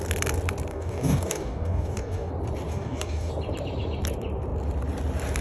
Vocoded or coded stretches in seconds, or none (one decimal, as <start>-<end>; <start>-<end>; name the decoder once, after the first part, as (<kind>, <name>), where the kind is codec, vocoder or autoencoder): 0.7-2.3 (codec, DAC); 2.7-3.3